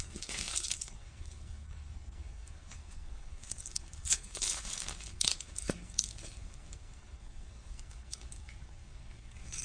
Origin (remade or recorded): remade